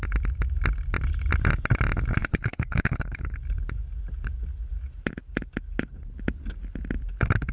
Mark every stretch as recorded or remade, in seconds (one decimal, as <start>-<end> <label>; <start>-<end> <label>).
0.0-2.2 recorded; 2.2-3.4 remade; 3.4-7.5 recorded